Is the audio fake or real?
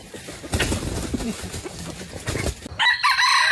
real